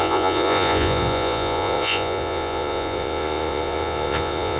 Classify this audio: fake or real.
fake